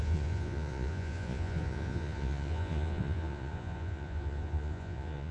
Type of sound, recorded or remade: remade